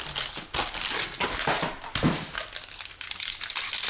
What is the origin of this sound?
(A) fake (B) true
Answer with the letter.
B